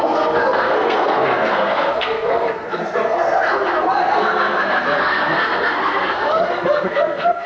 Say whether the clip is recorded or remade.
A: remade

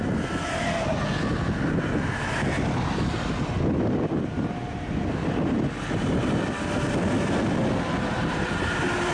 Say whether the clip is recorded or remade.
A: recorded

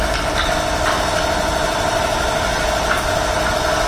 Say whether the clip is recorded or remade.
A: recorded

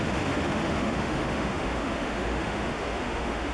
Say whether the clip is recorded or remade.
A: remade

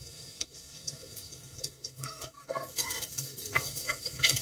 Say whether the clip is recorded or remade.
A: remade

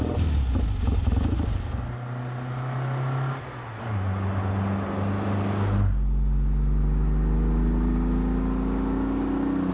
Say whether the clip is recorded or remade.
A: recorded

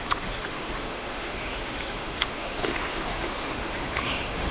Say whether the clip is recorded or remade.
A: remade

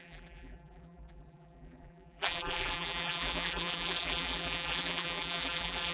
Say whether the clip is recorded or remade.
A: remade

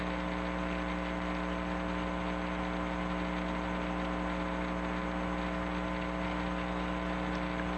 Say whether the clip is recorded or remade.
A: recorded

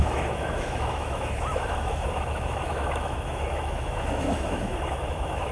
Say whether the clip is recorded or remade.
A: remade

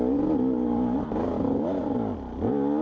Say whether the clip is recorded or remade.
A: recorded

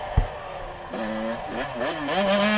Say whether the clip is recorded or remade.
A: recorded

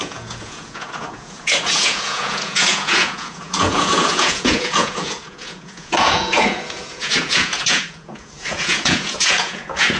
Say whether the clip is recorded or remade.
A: remade